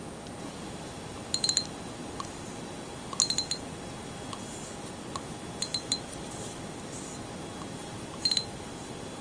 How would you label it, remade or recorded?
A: recorded